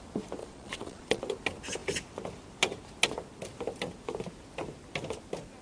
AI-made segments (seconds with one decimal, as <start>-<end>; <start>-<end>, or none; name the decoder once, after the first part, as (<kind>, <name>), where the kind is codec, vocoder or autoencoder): 0.4-1.2 (vocoder, Vocos)